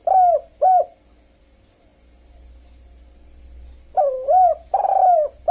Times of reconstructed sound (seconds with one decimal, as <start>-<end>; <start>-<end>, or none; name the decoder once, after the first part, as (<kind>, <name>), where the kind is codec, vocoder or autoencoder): none

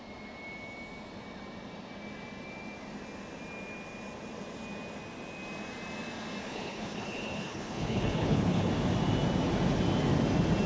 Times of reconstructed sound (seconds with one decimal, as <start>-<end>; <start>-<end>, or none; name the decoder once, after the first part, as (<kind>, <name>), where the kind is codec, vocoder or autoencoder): 6.4-8.7 (codec, HILCodec)

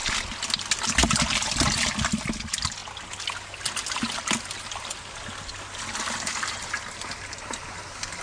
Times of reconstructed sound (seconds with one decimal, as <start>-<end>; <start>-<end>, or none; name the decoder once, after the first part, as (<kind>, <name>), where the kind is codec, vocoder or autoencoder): none

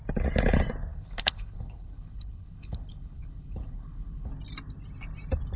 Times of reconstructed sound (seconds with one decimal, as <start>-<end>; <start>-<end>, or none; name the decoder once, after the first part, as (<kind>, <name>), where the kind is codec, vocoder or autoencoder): 0.9-4.3 (codec, HILCodec)

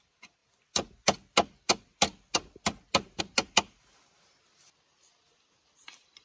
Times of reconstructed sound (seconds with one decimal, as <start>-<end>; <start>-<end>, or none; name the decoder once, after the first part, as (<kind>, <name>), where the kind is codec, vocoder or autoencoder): none

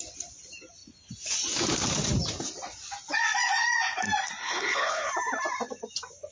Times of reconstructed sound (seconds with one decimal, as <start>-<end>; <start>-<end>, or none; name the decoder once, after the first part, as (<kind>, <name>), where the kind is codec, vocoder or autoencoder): 4.4-5.1 (codec, HILCodec)